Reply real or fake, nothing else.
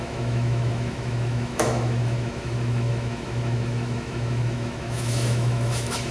fake